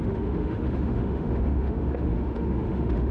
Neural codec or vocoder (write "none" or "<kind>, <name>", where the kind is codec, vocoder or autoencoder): autoencoder, DAC-VAE